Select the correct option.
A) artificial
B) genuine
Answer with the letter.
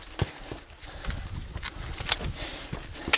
B